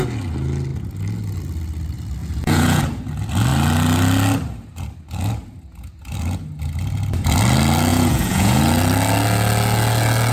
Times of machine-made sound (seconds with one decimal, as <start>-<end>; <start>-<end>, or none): 2.2-2.8; 7.9-8.6